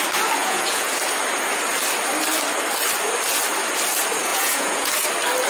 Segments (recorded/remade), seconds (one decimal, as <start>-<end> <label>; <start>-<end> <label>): 0.0-0.4 recorded; 0.4-0.9 remade; 0.9-4.3 recorded; 4.3-4.9 remade; 4.9-5.5 recorded